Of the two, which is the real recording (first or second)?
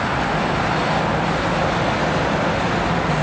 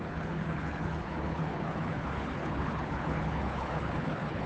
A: first